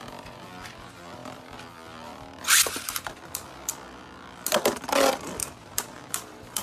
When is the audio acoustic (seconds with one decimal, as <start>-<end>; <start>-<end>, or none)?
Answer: 0.0-5.4; 6.1-6.6